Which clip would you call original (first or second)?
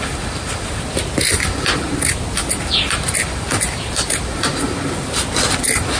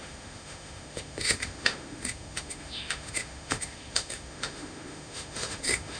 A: first